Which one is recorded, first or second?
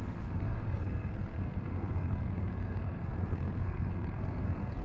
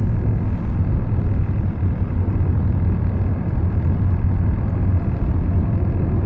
second